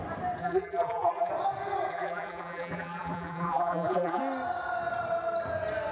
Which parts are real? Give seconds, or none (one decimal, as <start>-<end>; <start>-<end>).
0.0-0.4; 1.3-1.9; 4.2-5.9